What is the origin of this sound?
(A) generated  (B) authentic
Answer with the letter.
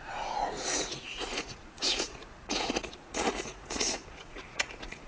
A